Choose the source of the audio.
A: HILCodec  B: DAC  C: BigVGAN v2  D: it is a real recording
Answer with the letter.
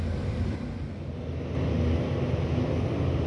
D